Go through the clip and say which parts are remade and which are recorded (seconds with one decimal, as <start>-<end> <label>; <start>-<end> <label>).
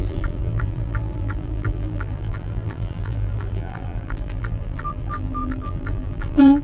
0.0-6.6 remade